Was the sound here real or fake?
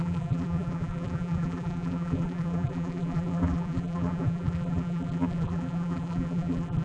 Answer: fake